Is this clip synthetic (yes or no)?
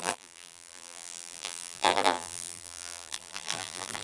yes